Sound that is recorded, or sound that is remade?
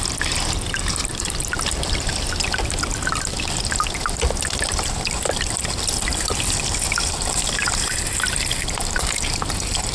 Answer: recorded